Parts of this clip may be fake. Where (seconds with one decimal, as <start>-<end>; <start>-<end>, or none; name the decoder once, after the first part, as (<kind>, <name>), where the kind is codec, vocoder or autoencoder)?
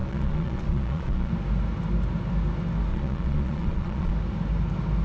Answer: 0.0-1.3 (vocoder, Vocos); 2.9-4.1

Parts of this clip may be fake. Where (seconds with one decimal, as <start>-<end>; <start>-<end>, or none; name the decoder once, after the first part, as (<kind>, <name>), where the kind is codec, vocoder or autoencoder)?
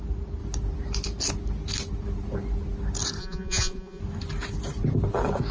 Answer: 3.2-4.0 (vocoder, Vocos)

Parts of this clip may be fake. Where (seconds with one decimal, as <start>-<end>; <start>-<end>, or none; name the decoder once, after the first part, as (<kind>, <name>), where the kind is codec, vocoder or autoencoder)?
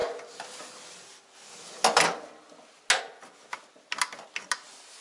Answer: none